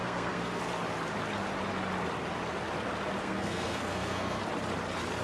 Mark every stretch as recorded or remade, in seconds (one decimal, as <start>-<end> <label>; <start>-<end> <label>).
0.0-0.6 remade; 0.6-3.2 recorded; 3.2-4.4 remade; 4.4-5.2 recorded